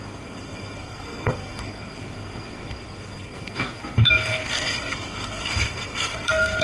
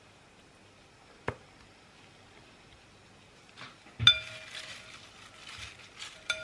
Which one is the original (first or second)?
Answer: second